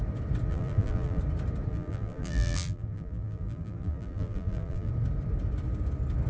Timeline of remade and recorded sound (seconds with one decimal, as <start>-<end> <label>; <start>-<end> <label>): 0.0-0.5 recorded; 0.5-1.2 remade; 1.2-1.7 recorded; 1.7-4.9 remade; 4.9-6.3 recorded